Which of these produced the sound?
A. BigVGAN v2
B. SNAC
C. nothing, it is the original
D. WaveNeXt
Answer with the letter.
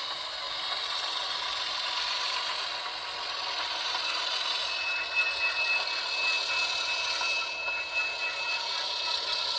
C